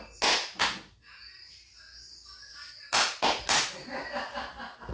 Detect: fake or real real